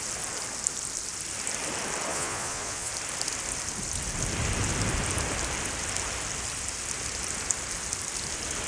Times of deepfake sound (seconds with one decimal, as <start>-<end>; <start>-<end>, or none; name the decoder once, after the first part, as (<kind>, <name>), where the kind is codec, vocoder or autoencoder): 2.1-2.9 (vocoder, Vocos)